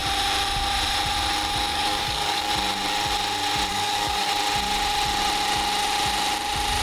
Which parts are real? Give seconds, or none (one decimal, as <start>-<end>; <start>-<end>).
0.0-1.7; 2.5-3.7; 4.3-6.8